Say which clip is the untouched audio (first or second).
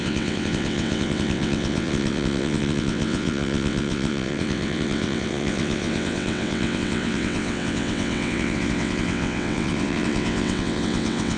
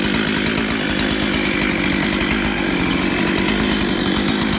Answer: second